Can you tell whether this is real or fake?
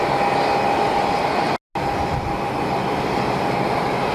real